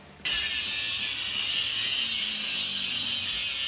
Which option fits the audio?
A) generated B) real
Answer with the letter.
B